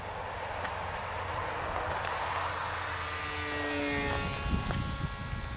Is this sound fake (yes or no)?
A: no